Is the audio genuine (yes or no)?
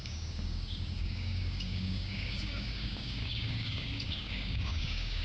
no